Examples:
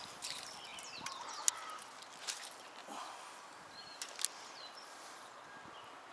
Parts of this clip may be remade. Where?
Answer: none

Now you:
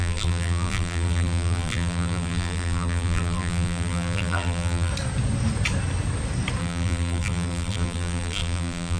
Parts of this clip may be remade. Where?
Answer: 0.0-4.9 (vocoder, BigVGAN v2); 6.6-9.0

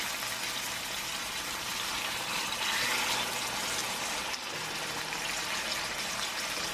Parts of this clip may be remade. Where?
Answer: 1.2-2.4 (vocoder, BigVGAN v2)

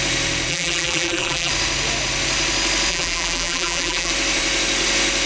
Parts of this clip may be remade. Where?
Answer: 0.5-1.5 (vocoder, BigVGAN v2); 2.9-4.1

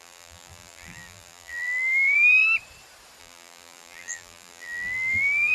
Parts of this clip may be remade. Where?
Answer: 0.0-2.4 (vocoder, BigVGAN v2); 3.2-5.5

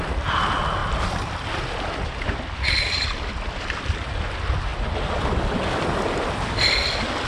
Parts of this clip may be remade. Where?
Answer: none